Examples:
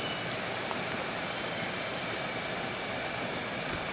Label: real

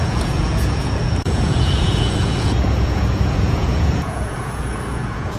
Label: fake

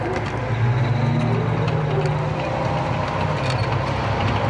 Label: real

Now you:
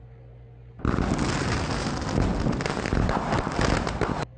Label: real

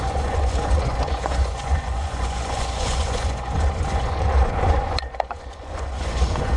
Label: fake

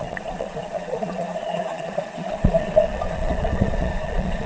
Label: fake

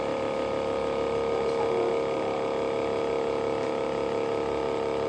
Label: real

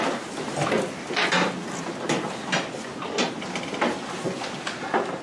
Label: real